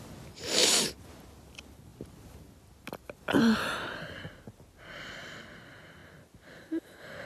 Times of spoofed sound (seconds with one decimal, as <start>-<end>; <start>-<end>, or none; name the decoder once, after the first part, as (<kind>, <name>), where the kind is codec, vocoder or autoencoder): none